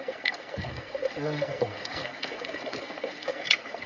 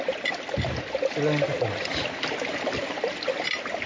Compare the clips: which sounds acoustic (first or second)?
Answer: second